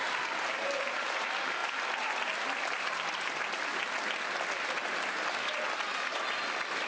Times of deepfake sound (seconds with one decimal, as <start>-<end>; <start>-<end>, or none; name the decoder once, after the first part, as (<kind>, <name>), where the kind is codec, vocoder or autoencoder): none